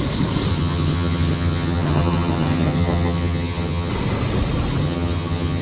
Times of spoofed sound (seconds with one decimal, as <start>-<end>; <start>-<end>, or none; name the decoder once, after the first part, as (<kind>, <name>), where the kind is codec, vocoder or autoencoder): 0.5-3.9 (vocoder, HiFi-GAN); 4.8-5.6